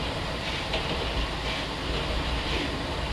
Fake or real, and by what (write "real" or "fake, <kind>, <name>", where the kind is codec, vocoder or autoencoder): real